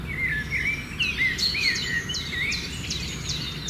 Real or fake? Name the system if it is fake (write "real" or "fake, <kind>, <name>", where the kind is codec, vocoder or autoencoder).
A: real